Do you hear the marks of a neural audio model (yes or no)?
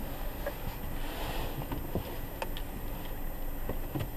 no